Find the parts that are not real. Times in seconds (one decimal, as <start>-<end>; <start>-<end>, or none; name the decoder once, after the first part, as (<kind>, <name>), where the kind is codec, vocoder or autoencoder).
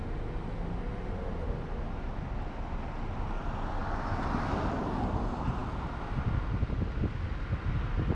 none